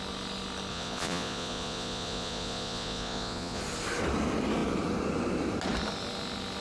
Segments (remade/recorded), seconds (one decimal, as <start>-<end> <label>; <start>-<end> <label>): 0.0-0.7 recorded; 0.7-3.6 remade; 3.6-6.6 recorded